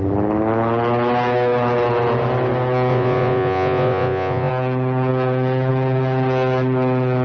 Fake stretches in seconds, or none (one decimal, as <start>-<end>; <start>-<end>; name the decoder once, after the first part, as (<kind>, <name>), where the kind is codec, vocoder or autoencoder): 2.9-4.5 (vocoder, Vocos)